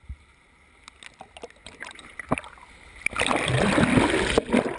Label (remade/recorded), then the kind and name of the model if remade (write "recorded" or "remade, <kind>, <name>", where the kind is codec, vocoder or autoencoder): recorded